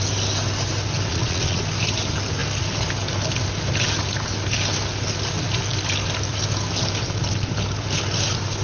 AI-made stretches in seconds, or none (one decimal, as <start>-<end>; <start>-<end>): 1.1-1.6